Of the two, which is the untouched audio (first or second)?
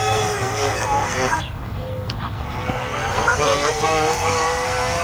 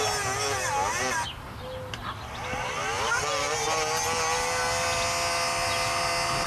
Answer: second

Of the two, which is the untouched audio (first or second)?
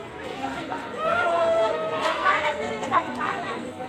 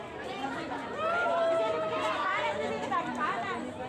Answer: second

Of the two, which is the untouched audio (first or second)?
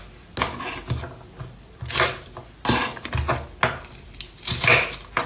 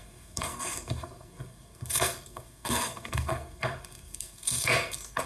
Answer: first